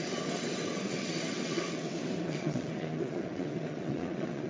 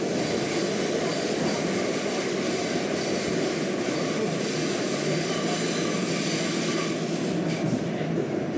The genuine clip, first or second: second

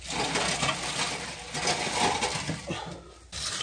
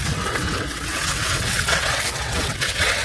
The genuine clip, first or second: first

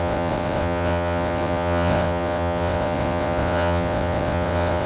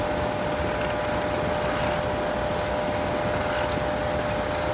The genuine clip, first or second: second